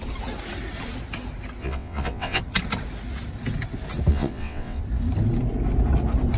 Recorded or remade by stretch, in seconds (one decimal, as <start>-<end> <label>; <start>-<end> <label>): 0.0-1.6 recorded; 1.6-2.4 remade; 2.4-4.1 recorded; 4.1-4.8 remade; 4.8-6.4 recorded